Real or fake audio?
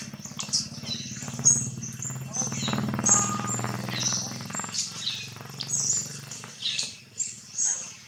real